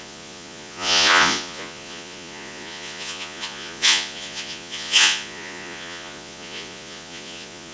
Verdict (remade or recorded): remade